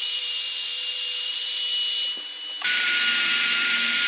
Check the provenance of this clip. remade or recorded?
remade